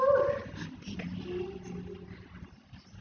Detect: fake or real real